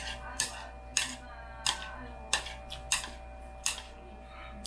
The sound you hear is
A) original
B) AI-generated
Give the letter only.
A